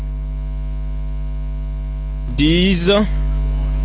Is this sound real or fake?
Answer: real